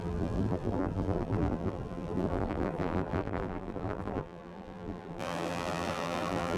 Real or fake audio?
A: fake